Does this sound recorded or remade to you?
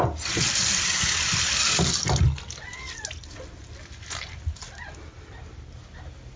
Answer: recorded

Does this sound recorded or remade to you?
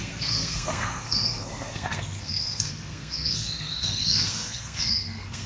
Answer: remade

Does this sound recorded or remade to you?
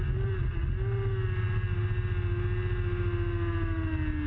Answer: recorded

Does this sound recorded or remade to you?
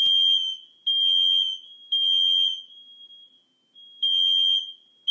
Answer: recorded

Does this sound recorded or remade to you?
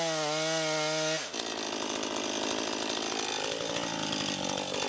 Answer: recorded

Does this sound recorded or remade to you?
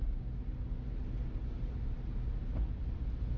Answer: recorded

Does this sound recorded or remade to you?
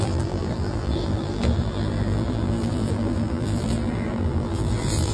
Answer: remade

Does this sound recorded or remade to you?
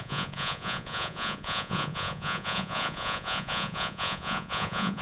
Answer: remade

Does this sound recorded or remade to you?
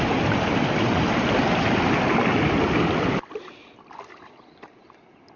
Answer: recorded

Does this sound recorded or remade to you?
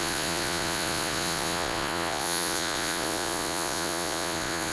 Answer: remade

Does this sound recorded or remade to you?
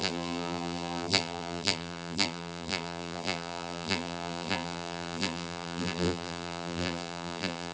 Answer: remade